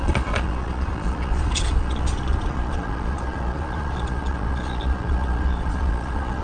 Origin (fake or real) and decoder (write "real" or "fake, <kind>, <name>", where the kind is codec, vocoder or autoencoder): fake, vocoder, Vocos